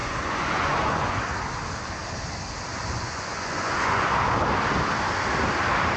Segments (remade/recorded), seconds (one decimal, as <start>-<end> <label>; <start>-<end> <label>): 0.0-1.2 remade; 1.2-2.7 recorded; 2.7-4.1 remade; 4.1-6.0 recorded